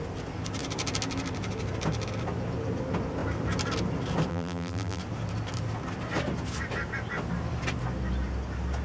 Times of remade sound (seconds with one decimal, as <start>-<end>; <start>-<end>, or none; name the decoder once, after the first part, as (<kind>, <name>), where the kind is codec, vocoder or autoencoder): 4.3-5.0 (vocoder, BigVGAN v2)